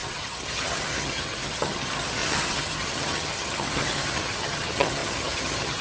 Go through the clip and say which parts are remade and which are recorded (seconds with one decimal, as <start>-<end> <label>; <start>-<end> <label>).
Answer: 0.0-5.8 remade